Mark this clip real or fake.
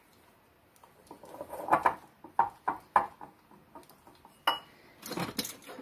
real